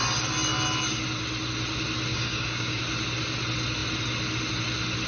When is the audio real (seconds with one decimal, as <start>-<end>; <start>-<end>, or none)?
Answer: 0.0-2.1; 2.8-5.1